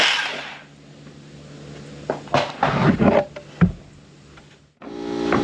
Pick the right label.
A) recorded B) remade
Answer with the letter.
A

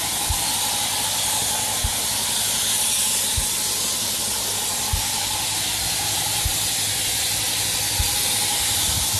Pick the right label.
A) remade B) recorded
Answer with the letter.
B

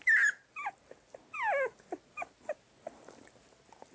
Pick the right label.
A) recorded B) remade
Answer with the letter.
A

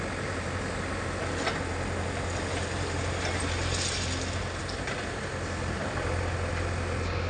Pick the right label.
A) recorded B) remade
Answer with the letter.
A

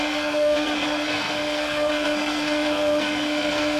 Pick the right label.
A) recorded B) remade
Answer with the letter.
B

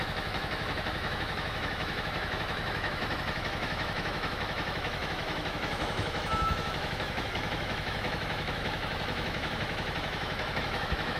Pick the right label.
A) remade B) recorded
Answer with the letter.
A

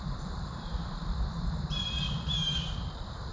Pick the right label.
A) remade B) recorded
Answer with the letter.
A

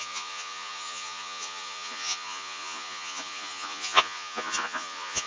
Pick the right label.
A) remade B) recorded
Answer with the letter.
A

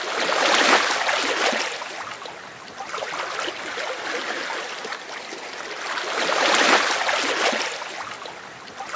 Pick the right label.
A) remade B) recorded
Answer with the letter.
B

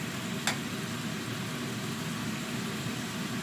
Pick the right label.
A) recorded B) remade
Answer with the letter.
A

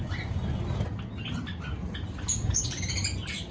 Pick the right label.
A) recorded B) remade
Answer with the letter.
A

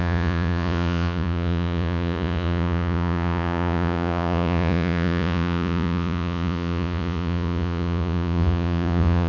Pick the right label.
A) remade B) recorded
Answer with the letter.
A